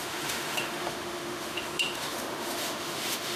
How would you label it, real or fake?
fake